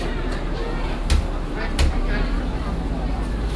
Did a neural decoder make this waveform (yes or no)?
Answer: no